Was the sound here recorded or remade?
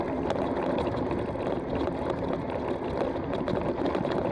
recorded